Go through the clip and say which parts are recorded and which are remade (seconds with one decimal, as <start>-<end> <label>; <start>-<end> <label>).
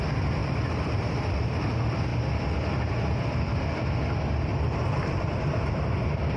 0.0-0.4 recorded; 0.4-1.0 remade; 1.0-4.5 recorded; 4.5-5.7 remade; 5.7-6.4 recorded